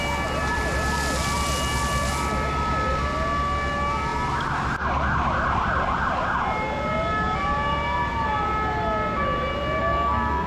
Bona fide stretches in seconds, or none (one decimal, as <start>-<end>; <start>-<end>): 0.0-9.8